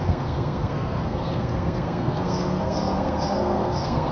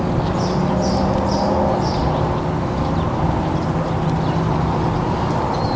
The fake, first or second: first